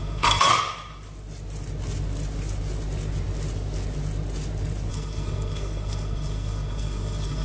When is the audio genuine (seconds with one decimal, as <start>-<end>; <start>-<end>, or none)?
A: 0.5-4.9